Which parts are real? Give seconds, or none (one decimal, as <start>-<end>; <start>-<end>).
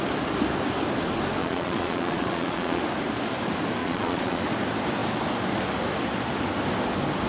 0.0-1.4; 2.8-3.8; 4.4-7.3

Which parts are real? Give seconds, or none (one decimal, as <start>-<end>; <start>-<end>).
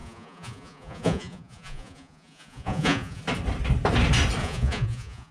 3.2-4.4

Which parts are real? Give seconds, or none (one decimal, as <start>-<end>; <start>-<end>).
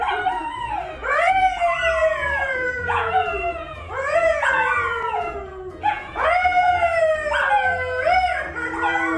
0.0-1.0; 1.6-2.0; 7.0-9.2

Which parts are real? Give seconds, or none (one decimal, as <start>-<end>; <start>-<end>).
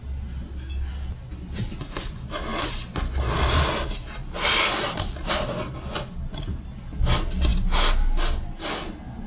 0.0-9.3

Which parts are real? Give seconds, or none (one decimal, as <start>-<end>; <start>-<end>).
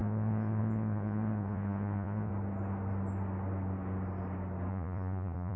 2.3-4.7